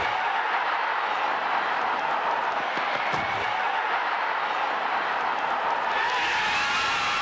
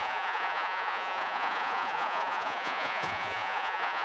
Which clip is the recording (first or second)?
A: first